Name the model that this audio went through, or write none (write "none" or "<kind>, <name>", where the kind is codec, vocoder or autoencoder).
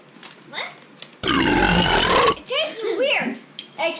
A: none